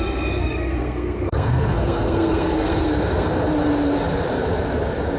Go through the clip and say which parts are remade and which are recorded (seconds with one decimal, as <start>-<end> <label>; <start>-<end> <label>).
0.0-0.4 recorded; 0.4-3.5 remade; 3.5-5.2 recorded